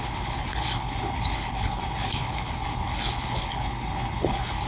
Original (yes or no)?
no